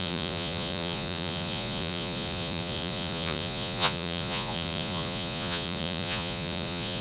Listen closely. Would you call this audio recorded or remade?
remade